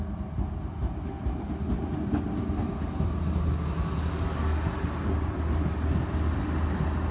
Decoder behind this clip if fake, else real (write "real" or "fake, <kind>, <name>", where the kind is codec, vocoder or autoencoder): real